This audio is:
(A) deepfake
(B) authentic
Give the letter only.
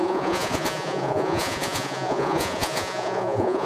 A